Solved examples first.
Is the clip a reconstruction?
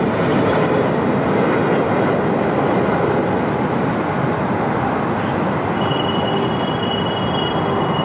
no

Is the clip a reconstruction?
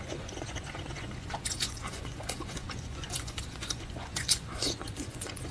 yes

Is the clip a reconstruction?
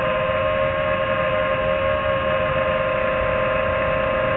no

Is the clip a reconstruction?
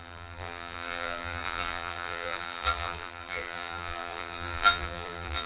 yes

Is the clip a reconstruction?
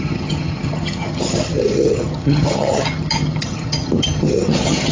yes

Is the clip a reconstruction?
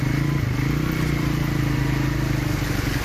no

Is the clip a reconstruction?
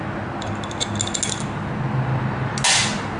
no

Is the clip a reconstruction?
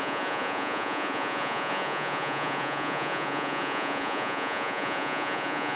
yes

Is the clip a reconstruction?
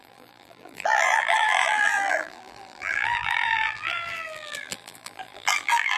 yes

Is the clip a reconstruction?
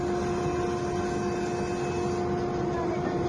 no